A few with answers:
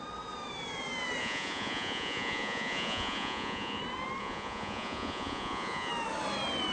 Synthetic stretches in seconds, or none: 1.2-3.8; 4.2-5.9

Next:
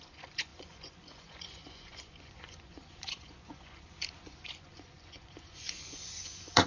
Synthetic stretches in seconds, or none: 0.0-6.7